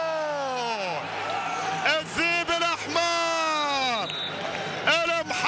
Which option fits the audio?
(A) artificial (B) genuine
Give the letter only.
B